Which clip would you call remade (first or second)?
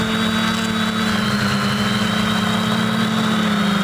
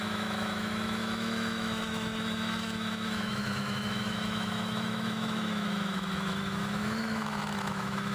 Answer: second